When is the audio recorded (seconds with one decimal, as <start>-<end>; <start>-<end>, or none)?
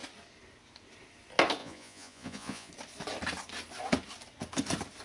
0.0-1.6; 2.7-5.0